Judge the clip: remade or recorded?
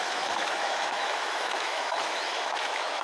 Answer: remade